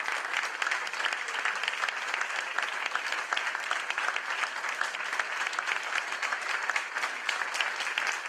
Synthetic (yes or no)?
no